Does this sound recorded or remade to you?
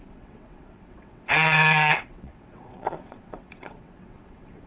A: remade